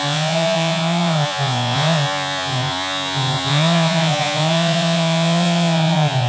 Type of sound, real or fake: fake